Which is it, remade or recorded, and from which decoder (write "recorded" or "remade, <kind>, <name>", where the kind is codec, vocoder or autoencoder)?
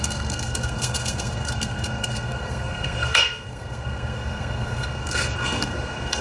remade, codec, SNAC